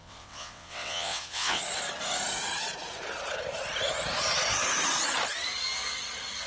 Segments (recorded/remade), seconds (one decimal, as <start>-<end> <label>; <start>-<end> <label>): 0.0-1.6 remade; 1.6-6.5 recorded